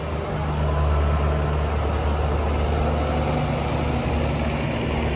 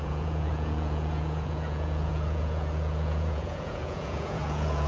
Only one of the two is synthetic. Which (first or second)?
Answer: second